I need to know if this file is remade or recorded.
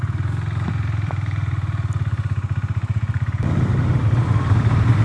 remade